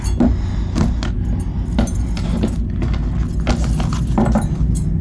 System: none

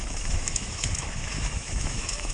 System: autoencoder, DAC-VAE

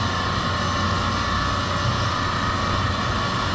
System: none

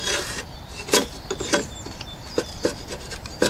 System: vocoder, BigVGAN v2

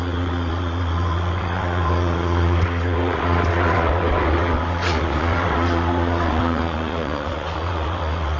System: vocoder, WaveNeXt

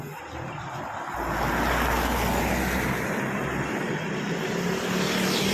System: none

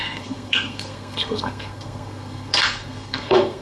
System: codec, SNAC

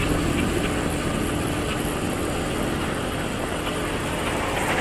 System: none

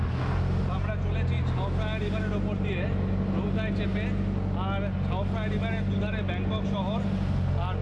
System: none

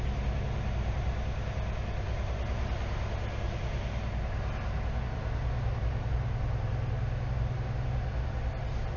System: none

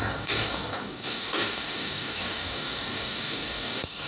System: codec, DAC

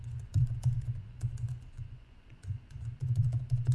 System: vocoder, Vocos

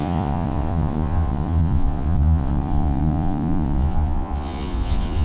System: vocoder, Vocos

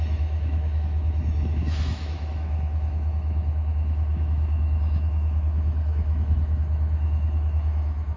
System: autoencoder, DAC-VAE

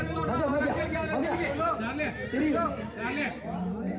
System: none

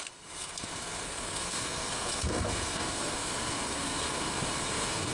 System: codec, SNAC